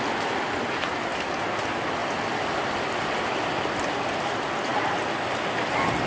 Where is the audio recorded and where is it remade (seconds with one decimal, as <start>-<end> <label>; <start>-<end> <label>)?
0.0-6.1 recorded